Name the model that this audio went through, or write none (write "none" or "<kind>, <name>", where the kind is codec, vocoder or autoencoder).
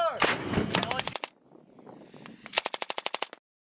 none